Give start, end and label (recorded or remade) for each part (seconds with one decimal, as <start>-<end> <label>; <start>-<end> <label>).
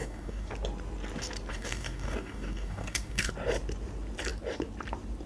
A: 0.0-0.5 remade; 0.5-1.5 recorded; 1.5-3.3 remade; 3.3-5.3 recorded